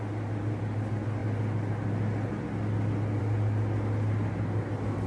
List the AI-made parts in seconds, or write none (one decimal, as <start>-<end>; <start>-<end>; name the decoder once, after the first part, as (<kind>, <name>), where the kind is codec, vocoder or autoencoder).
none